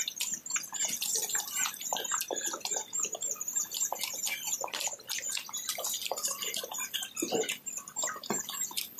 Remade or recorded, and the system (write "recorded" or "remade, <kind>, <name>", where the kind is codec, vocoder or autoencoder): remade, vocoder, BigVGAN v2